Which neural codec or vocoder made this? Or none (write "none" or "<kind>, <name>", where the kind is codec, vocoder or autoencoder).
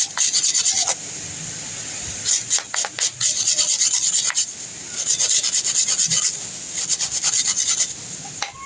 none